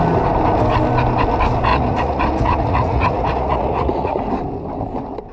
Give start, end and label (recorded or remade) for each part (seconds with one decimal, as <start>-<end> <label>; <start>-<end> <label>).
0.0-1.7 recorded; 1.7-4.2 remade; 4.2-5.3 recorded